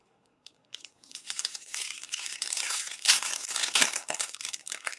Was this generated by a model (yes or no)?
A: yes